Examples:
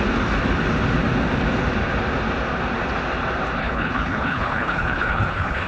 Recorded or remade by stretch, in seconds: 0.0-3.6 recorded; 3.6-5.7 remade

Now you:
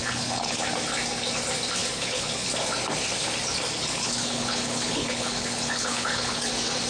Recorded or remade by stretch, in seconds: 0.0-0.6 remade; 0.6-1.8 recorded; 1.8-2.5 remade; 2.5-3.8 recorded; 3.8-6.5 remade; 6.5-6.9 recorded

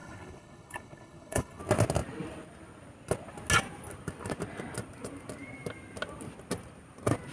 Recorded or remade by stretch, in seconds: 0.0-1.6 remade; 1.6-7.3 recorded

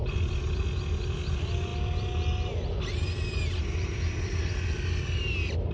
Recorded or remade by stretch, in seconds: 0.0-5.7 recorded

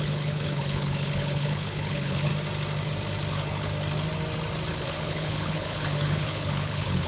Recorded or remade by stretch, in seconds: 0.0-2.3 remade; 2.3-3.3 recorded; 3.3-3.7 remade; 3.7-4.7 recorded; 4.7-7.1 remade

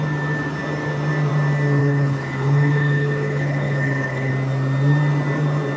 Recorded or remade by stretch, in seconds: 0.0-1.8 recorded; 1.8-4.3 remade; 4.3-5.8 recorded

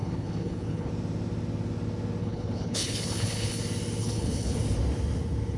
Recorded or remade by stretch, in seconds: 0.0-0.9 remade; 0.9-2.2 recorded; 2.2-3.6 remade; 3.6-4.0 recorded; 4.0-4.6 remade; 4.6-5.6 recorded